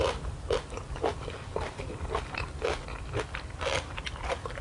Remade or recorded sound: recorded